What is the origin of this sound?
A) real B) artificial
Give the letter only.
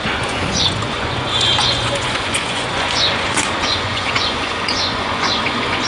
B